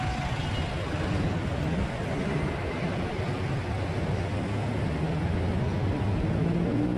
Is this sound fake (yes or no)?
no